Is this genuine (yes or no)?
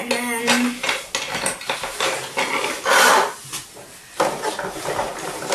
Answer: yes